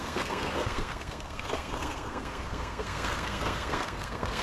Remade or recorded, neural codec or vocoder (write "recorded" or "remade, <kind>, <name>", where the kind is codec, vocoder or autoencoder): remade, codec, SNAC